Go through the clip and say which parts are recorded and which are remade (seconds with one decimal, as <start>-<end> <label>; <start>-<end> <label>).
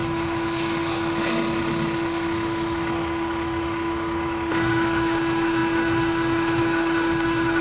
0.0-7.6 remade